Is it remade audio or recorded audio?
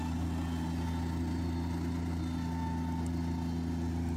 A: recorded